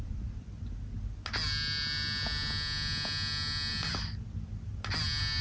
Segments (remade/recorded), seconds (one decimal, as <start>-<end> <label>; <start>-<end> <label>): 0.0-5.4 recorded